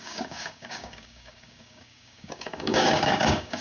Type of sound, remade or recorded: remade